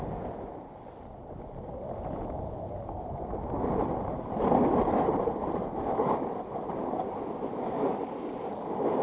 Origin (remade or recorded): recorded